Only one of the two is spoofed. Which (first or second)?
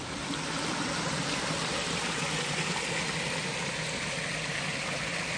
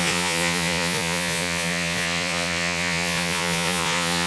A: second